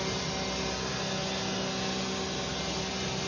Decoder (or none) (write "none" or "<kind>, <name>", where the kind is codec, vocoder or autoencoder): none